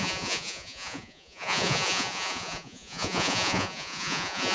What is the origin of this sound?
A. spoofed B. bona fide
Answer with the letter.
A